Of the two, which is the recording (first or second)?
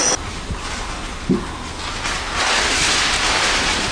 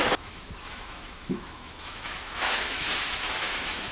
first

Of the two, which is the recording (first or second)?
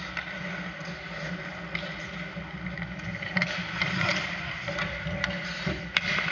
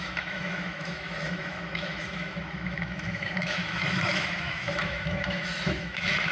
first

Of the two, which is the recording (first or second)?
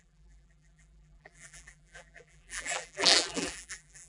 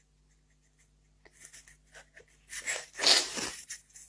second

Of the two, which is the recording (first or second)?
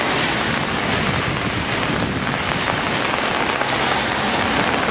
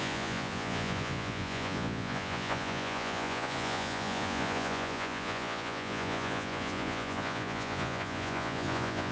first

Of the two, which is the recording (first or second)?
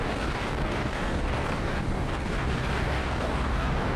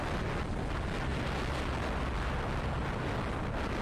second